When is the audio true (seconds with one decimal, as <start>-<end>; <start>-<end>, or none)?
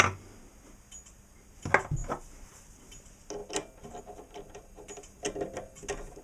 0.0-2.0; 2.6-6.2